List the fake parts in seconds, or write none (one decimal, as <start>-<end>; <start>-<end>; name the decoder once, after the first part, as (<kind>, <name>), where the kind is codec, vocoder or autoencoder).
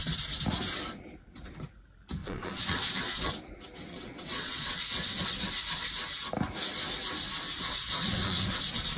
2.2-3.3 (vocoder, WaveNeXt); 3.9-5.2; 7.5-8.6